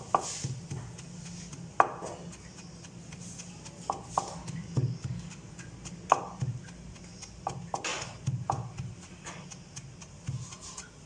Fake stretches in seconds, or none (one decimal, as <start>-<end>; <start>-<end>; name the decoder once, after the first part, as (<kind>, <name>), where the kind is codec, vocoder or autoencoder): 4.4-5.5 (codec, DAC)